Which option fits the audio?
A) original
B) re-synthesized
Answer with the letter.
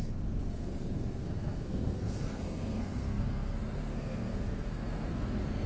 B